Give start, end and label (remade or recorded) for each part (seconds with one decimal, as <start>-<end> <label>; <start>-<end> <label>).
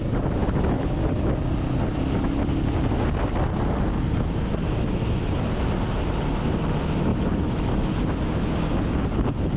0.0-0.4 recorded; 0.4-1.1 remade; 1.1-7.1 recorded; 7.1-8.6 remade; 8.6-9.6 recorded